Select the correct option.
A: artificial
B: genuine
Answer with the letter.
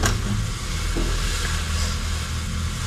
B